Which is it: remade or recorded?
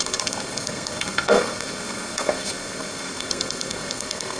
remade